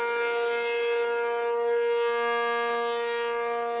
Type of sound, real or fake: real